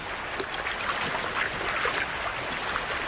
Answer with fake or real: real